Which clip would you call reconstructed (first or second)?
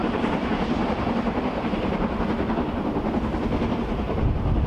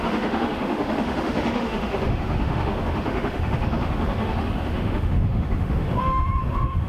second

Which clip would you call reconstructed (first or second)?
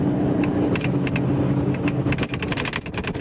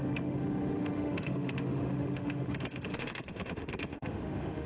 second